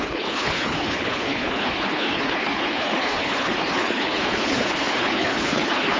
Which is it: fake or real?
fake